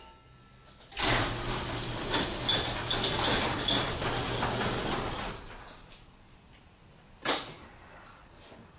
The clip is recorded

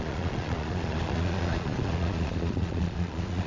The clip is remade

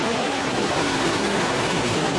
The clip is remade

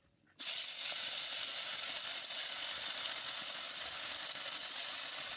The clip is recorded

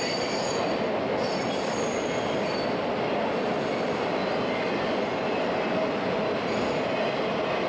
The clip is recorded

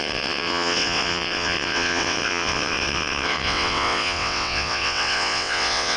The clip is remade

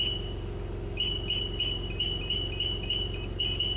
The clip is recorded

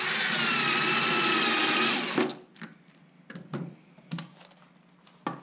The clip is recorded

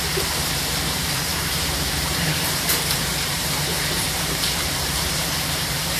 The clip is remade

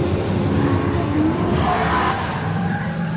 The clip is remade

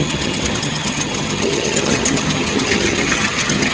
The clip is remade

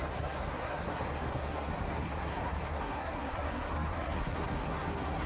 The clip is remade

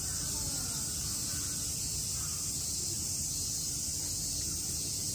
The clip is recorded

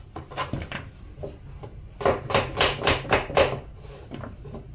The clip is recorded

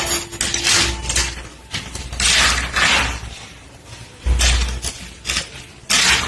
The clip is recorded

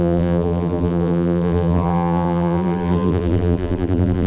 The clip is remade